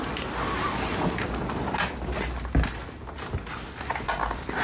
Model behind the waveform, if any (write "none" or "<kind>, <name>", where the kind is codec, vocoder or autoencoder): none